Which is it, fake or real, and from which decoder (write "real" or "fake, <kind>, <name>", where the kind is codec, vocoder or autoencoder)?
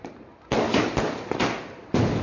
real